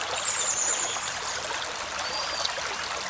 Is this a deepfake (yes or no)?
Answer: no